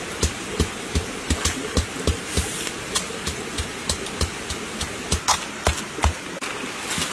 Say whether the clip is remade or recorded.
recorded